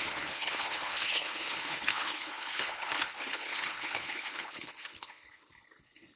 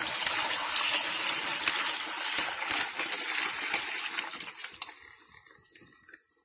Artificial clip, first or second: first